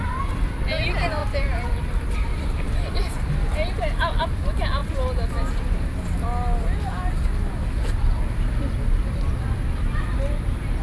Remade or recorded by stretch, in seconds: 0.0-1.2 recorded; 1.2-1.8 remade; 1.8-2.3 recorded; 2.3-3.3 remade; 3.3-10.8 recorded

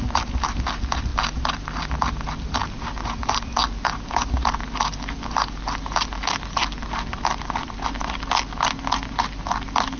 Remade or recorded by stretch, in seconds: 0.0-10.0 recorded